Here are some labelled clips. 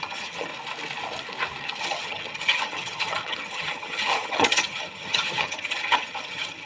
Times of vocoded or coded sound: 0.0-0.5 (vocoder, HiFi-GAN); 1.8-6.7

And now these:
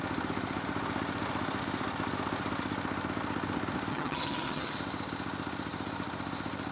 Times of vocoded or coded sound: 3.9-4.7 (vocoder, HiFi-GAN)